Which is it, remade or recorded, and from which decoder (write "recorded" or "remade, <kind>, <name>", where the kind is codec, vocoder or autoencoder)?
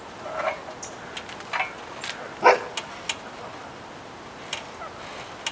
recorded